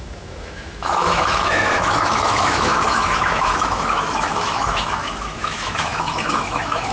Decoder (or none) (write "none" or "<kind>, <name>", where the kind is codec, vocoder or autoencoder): autoencoder, DAC-VAE